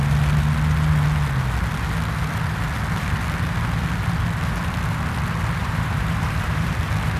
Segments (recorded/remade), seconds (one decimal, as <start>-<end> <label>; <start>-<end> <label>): 0.0-5.6 recorded; 5.6-6.7 remade; 6.7-7.2 recorded